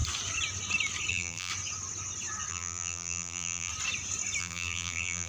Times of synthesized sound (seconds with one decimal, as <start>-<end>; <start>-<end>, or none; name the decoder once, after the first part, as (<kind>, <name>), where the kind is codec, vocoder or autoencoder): 1.1-1.5 (vocoder, BigVGAN v2); 2.5-3.7; 4.4-5.3